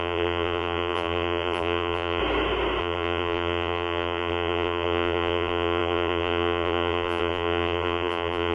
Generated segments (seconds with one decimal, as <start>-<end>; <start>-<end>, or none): 0.0-2.2; 2.8-8.5